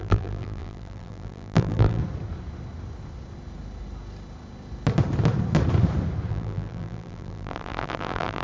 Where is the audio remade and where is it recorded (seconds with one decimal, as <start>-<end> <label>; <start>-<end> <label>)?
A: 0.0-2.0 remade; 2.0-6.3 recorded; 6.3-8.4 remade